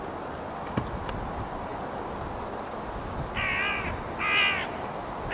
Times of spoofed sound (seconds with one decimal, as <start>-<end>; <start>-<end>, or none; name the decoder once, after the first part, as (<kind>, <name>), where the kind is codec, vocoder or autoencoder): none